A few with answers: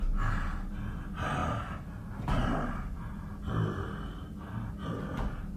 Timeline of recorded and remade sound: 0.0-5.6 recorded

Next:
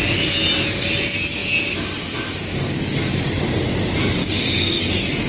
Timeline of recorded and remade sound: 0.0-4.2 recorded; 4.2-4.8 remade; 4.8-5.3 recorded

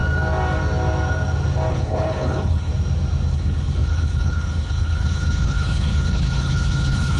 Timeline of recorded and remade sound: 0.0-1.7 recorded; 1.7-2.7 remade; 2.7-3.3 recorded; 3.3-7.2 remade

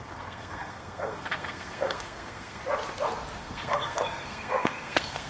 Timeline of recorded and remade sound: 0.0-2.6 remade; 2.6-3.4 recorded; 3.4-5.3 remade

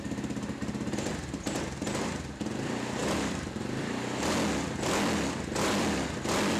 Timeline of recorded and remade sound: 0.0-6.6 recorded

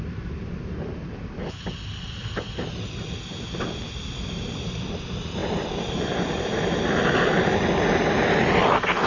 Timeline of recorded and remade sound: 0.0-9.1 recorded

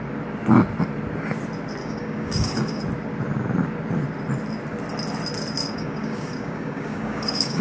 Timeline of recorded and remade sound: 0.0-1.8 recorded; 1.8-2.8 remade; 2.8-5.6 recorded; 5.6-7.6 remade

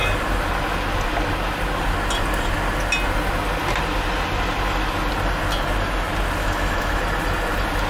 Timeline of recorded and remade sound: 0.0-6.4 recorded; 6.4-7.0 remade; 7.0-7.9 recorded